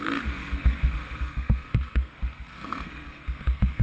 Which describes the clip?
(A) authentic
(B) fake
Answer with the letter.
B